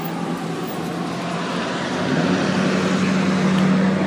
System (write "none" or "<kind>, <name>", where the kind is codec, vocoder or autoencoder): none